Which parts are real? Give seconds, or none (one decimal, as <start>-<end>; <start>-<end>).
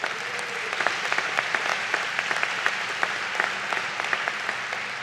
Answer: none